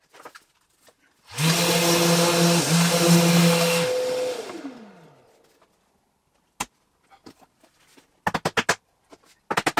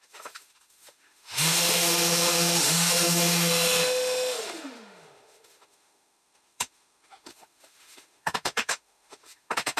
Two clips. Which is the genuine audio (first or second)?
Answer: first